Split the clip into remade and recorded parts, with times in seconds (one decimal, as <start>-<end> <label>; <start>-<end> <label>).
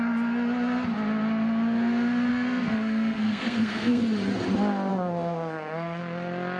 0.0-2.3 recorded; 2.3-4.0 remade; 4.0-4.9 recorded; 4.9-6.0 remade; 6.0-6.6 recorded